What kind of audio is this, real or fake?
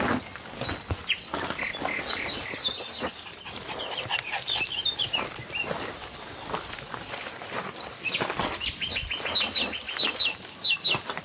real